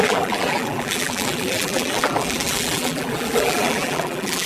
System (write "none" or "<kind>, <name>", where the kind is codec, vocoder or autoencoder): vocoder, BigVGAN v2